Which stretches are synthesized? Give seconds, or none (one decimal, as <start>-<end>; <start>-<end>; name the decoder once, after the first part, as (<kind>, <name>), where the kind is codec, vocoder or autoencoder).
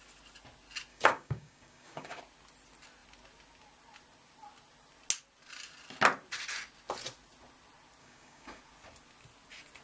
0.9-2.2 (codec, DAC); 8.0-8.6